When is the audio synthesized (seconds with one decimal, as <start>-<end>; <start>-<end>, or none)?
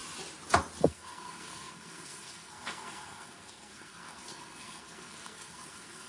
0.8-6.1